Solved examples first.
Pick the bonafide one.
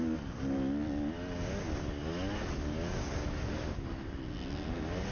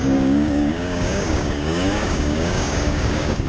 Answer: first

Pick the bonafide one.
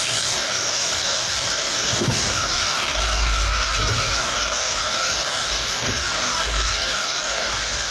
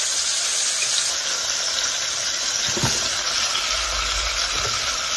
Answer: second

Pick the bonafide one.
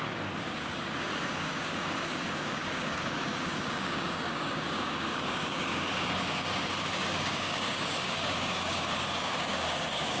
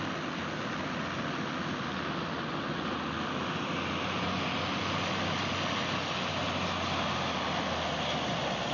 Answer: second